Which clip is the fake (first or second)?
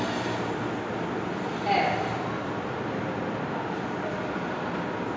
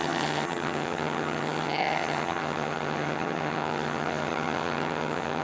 second